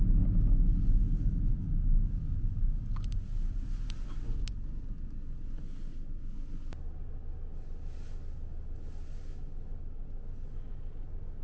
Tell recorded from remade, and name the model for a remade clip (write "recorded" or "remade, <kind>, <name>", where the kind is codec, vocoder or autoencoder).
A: recorded